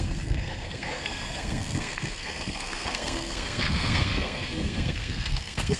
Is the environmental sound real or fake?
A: fake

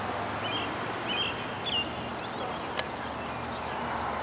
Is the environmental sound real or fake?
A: real